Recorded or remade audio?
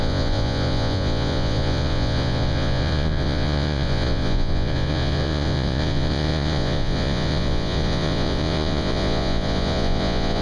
remade